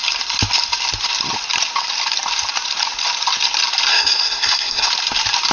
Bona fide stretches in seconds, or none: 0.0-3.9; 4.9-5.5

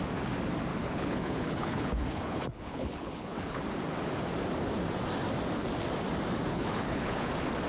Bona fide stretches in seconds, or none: 0.0-0.7; 3.6-6.5; 7.3-7.7

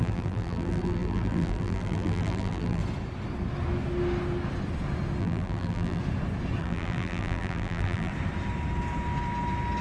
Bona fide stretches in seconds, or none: 2.8-5.2; 6.0-6.6; 8.1-9.8

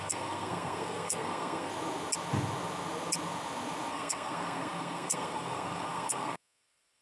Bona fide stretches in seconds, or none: 1.7-3.9

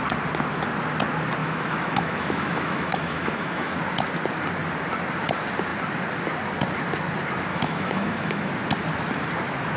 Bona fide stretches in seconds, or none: 0.0-1.4; 3.8-7.5; 8.5-9.8

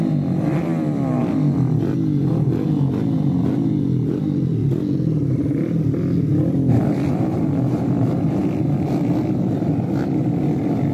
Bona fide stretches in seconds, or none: 1.2-6.0; 8.4-9.2

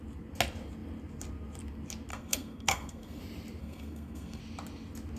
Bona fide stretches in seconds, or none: 0.0-2.1; 3.2-3.6; 4.4-5.2